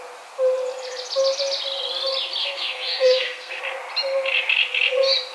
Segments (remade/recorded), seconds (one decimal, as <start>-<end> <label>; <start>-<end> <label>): 0.0-2.4 recorded; 2.4-3.6 remade; 3.6-5.3 recorded